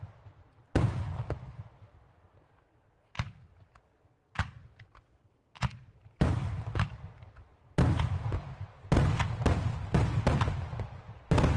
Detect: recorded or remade recorded